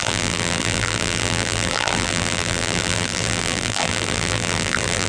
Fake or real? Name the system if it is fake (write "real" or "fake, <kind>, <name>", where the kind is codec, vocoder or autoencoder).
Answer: fake, vocoder, BigVGAN v2